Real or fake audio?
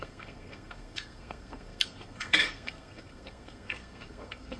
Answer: fake